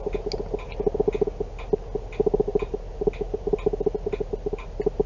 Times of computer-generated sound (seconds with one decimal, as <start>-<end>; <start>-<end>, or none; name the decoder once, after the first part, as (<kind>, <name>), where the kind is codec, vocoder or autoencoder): none

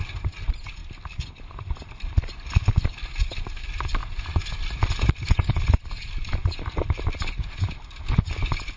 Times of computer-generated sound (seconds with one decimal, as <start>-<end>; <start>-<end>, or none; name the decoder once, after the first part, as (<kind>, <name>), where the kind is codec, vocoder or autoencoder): 0.0-8.8 (vocoder, BigVGAN v2)

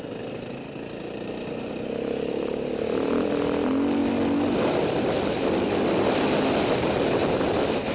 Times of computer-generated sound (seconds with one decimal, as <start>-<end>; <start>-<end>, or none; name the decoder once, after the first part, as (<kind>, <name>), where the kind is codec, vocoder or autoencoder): none

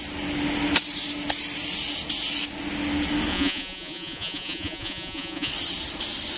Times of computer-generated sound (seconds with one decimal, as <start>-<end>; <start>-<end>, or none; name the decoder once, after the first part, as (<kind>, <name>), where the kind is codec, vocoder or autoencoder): 3.3-5.5 (vocoder, Vocos)

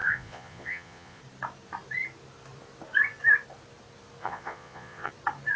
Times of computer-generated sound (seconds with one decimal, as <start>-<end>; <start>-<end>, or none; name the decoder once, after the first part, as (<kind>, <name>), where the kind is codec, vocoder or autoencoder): 0.0-1.2 (vocoder, Vocos); 4.2-5.1

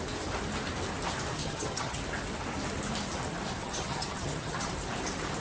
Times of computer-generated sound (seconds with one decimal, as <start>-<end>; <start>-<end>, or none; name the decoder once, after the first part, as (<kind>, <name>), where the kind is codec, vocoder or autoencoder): 1.4-2.0 (vocoder, HiFi-GAN); 3.6-4.7

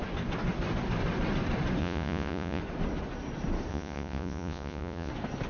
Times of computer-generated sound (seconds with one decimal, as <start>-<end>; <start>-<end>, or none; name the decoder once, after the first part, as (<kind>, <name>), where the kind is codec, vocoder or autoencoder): 1.8-2.6 (vocoder, Vocos); 3.7-5.1